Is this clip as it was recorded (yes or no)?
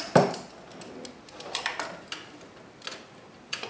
yes